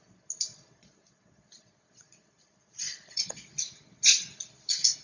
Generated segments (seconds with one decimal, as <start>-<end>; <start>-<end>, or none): 0.5-3.5